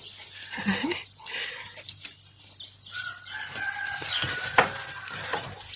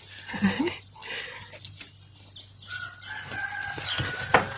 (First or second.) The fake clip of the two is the first